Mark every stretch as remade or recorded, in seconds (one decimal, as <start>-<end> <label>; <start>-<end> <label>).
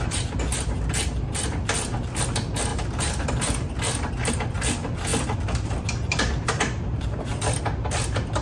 0.0-8.4 recorded